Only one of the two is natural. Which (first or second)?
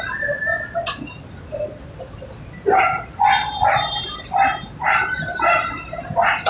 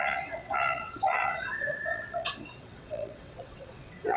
first